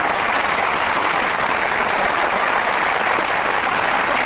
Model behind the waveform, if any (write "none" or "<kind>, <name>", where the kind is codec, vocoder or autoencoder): none